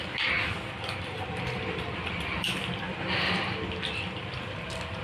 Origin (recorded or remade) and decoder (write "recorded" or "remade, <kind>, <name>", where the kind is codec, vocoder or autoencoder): remade, vocoder, BigVGAN v2